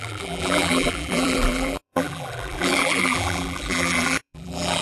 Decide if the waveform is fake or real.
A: fake